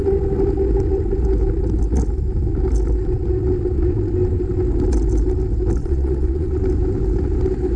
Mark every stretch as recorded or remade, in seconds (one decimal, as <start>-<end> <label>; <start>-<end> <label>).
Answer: 0.0-5.8 recorded; 5.8-6.5 remade; 6.5-7.8 recorded

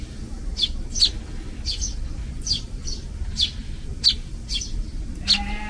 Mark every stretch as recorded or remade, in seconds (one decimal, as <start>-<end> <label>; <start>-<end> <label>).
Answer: 0.0-5.7 recorded

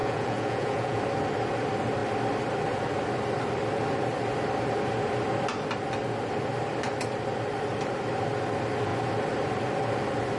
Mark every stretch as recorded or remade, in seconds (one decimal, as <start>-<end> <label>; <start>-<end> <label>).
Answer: 0.0-1.0 remade; 1.0-10.4 recorded

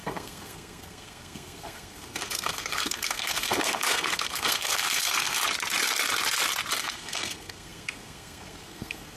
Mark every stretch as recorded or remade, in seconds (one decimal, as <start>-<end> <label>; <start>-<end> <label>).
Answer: 0.0-5.4 remade; 5.4-6.8 recorded; 6.8-9.2 remade